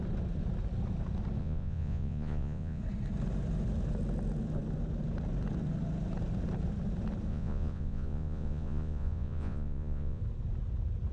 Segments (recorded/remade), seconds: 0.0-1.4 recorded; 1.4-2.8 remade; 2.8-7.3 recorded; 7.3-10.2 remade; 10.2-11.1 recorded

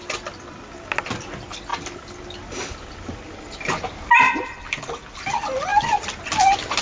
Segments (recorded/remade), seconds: 0.0-6.8 recorded

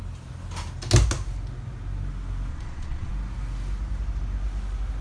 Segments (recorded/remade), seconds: 0.0-2.5 recorded; 2.5-3.1 remade; 3.1-5.0 recorded

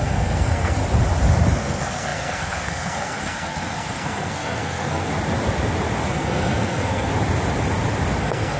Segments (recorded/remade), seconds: 0.0-0.8 remade; 0.8-1.6 recorded; 1.6-5.1 remade; 5.1-6.1 recorded; 6.1-7.1 remade; 7.1-8.2 recorded; 8.2-8.6 remade